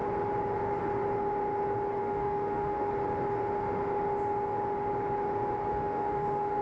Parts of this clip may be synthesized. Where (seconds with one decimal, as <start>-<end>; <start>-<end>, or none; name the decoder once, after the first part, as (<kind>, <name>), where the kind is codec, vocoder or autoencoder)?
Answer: 2.0-2.9 (autoencoder, DAC-VAE); 5.7-6.6